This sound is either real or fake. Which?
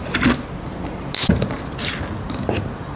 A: real